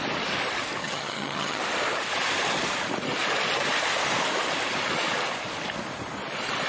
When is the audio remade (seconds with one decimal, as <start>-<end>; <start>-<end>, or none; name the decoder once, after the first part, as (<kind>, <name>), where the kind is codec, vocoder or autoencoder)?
0.8-1.6 (vocoder, HiFi-GAN)